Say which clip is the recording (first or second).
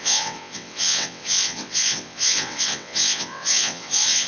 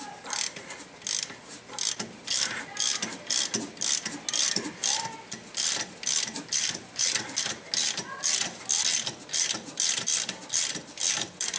second